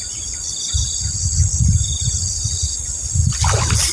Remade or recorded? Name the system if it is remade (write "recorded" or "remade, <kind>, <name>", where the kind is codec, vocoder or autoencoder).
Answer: recorded